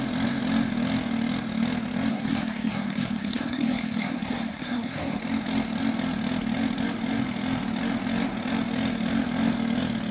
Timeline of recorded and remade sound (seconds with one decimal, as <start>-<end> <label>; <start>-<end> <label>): 0.0-2.1 recorded; 2.1-5.2 remade; 5.2-10.1 recorded